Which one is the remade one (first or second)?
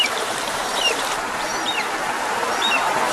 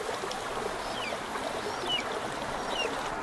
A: first